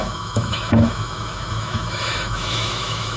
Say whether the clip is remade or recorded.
remade